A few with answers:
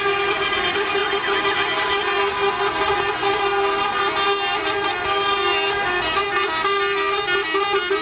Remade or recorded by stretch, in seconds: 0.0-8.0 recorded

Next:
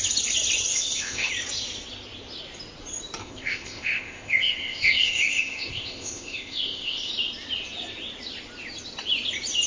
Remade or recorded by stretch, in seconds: 0.0-0.7 recorded; 0.7-1.3 remade; 1.3-3.2 recorded; 3.2-7.1 remade; 7.1-9.7 recorded

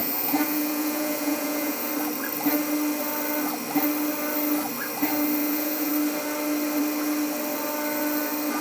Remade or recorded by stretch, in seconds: 0.0-1.9 remade; 1.9-5.4 recorded; 5.4-5.9 remade; 5.9-8.6 recorded

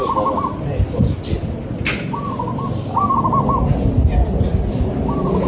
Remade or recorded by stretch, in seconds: 0.0-5.5 recorded